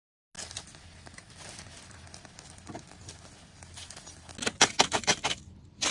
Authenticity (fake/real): real